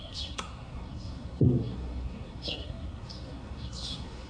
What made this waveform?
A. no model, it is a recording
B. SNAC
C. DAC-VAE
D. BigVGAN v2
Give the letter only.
B